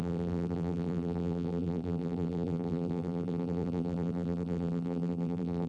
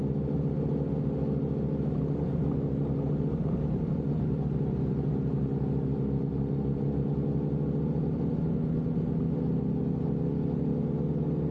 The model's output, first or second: first